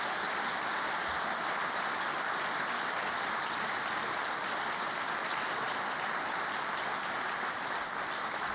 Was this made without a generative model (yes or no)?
yes